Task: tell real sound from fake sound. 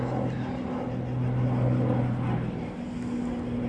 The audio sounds real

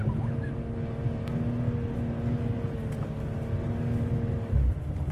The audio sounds real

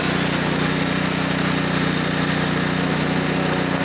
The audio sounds real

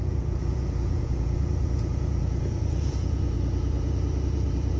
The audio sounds fake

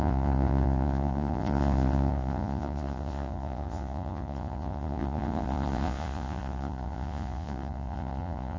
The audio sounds fake